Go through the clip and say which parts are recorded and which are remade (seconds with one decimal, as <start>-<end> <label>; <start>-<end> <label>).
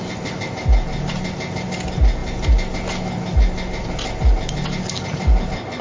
0.0-5.8 recorded